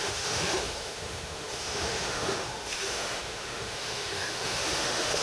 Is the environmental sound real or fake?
fake